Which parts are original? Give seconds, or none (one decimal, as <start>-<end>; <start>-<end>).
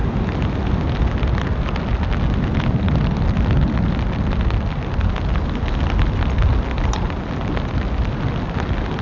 0.0-9.0